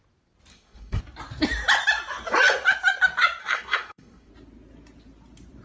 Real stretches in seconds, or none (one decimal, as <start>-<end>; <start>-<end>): 0.0-0.5; 1.0-3.4; 4.3-5.6